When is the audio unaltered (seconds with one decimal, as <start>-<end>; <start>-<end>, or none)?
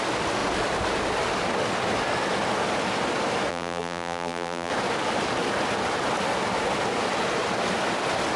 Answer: 0.0-3.5; 4.7-8.4